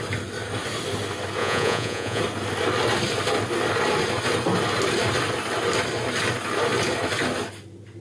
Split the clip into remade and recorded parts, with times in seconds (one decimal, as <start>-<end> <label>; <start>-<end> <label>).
0.0-1.4 recorded; 1.4-2.2 remade; 2.2-8.0 recorded